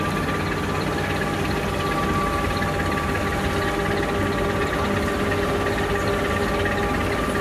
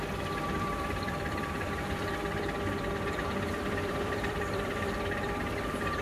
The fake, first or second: second